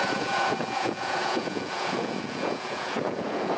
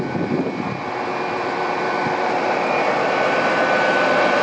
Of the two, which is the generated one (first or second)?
first